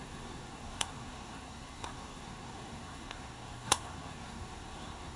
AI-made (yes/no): yes